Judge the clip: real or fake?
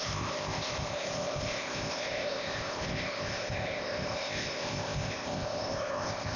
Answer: fake